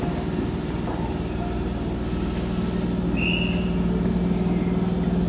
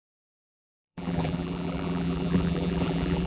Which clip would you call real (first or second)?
first